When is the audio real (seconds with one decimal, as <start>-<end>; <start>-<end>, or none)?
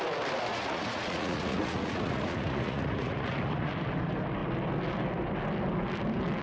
0.0-0.5; 3.7-6.4